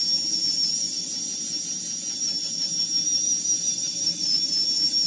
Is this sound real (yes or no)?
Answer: yes